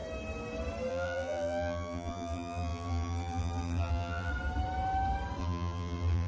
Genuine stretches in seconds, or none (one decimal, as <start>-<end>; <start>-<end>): 0.0-0.9; 4.3-5.4